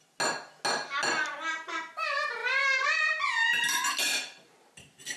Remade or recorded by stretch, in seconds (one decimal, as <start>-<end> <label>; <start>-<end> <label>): 0.0-5.2 recorded